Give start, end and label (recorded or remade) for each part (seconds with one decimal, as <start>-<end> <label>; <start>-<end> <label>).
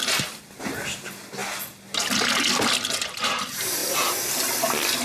0.0-3.8 recorded; 3.8-4.3 remade; 4.3-5.0 recorded